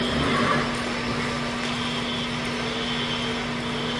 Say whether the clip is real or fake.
real